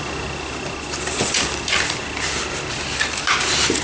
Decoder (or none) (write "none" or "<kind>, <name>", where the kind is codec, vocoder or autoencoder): none